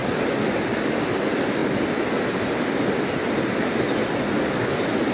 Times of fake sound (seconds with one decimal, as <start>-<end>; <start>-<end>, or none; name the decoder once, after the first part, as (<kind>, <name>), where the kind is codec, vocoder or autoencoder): none